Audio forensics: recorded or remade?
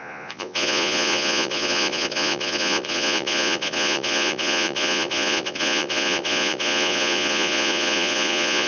remade